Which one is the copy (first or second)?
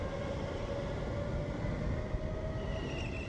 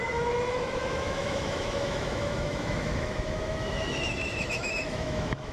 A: second